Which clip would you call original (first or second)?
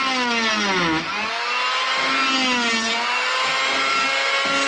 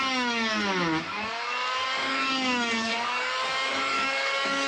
first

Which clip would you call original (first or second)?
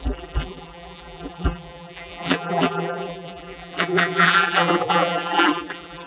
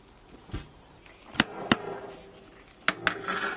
second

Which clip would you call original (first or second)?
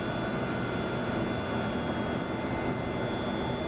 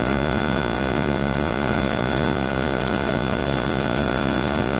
first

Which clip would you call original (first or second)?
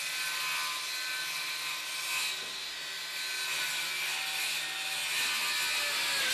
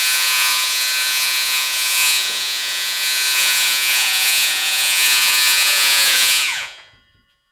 first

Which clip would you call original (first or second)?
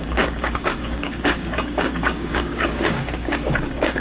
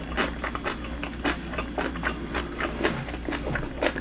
second